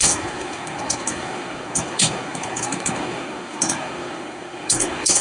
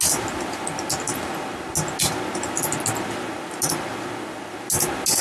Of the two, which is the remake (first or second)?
first